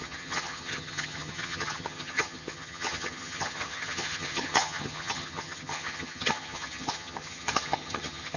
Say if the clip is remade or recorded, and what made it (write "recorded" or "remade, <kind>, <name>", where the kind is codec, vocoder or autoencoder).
remade, vocoder, HiFi-GAN